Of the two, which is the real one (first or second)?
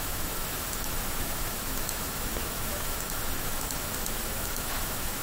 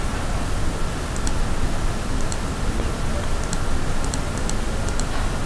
second